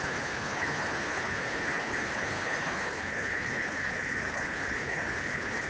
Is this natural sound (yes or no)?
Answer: no